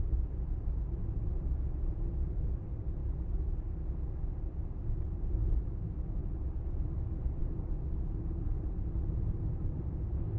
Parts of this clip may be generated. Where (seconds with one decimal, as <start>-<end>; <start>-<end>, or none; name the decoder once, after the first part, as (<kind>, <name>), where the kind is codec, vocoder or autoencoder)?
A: none

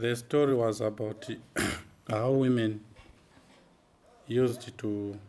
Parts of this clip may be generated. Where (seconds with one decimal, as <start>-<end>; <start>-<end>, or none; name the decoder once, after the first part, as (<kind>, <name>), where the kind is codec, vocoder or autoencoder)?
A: 1.7-2.5 (codec, HILCodec)

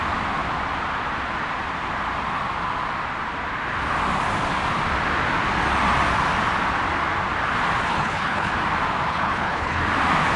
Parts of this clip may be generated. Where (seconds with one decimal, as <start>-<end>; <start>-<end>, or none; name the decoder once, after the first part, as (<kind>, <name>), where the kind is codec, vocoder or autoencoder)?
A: 7.9-8.5 (codec, HILCodec); 9.1-9.8

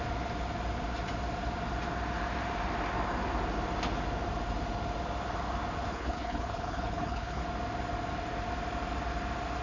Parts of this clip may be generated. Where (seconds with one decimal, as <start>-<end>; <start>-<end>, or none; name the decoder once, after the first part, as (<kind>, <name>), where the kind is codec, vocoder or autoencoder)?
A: 5.9-7.4 (codec, HILCodec)

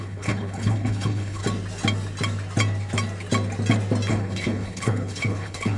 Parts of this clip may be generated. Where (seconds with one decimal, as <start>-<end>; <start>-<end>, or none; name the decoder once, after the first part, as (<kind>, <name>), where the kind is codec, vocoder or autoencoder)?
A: 0.0-1.4 (codec, HILCodec); 4.1-5.8

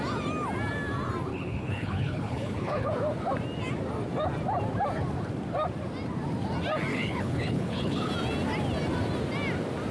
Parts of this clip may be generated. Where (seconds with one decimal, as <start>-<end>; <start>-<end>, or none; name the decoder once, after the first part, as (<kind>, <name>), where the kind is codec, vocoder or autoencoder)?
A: 1.3-2.9 (codec, HILCodec); 6.9-8.1

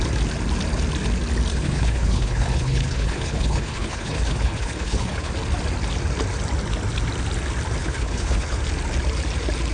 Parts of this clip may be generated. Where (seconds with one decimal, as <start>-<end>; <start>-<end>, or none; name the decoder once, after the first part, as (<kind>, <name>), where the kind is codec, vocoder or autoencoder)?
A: 1.5-5.3 (codec, HILCodec); 7.8-8.6